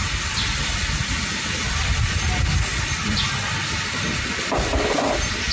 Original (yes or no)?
yes